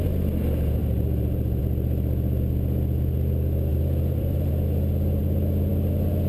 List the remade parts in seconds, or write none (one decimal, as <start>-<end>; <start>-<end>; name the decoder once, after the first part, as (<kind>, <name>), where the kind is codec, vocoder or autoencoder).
0.8-1.6 (vocoder, BigVGAN v2); 3.7-4.5